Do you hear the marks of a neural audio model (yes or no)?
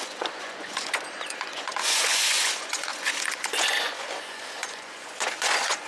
yes